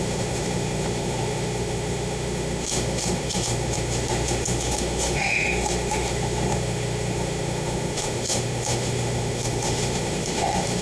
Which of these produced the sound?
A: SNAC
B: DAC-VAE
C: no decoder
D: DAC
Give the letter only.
B